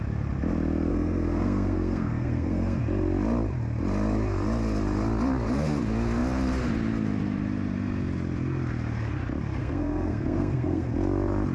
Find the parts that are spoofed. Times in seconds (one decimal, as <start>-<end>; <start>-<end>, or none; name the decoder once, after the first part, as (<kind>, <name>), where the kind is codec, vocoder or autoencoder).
0.9-2.8 (codec, SNAC); 9.6-10.9